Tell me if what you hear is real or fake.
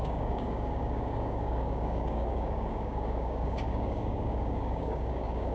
fake